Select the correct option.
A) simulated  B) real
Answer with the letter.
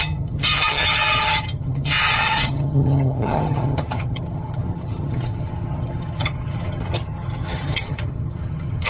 A